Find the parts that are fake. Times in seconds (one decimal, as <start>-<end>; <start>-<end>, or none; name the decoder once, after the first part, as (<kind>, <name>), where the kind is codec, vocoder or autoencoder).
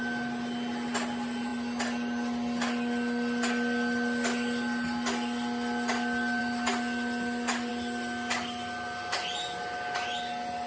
none